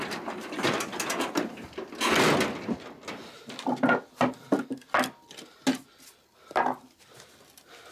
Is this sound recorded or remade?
recorded